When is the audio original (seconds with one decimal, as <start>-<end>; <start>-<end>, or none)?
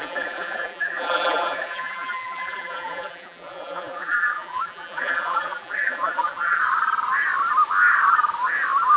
6.6-9.0